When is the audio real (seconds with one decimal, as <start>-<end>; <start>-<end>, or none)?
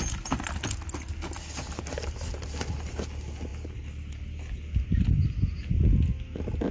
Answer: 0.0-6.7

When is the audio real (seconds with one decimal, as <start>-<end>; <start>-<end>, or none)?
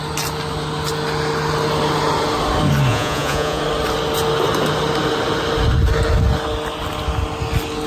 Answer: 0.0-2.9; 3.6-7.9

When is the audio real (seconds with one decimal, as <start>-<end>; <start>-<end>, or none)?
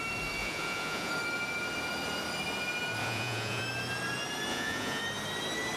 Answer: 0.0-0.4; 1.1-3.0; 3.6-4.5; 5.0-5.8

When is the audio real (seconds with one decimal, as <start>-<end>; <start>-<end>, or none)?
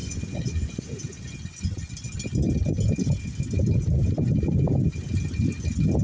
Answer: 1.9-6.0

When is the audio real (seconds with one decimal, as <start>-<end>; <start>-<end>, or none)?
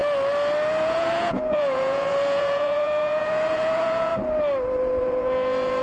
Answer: 0.0-0.8; 4.1-5.0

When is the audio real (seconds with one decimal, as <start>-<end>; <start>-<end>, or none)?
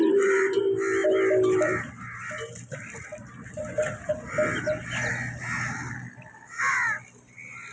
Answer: 0.0-7.7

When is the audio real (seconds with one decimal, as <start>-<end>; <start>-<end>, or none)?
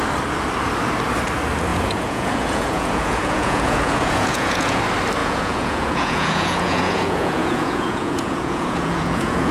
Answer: 0.0-1.7; 4.8-5.2